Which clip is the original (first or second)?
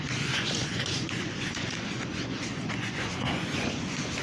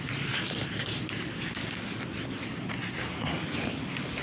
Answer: second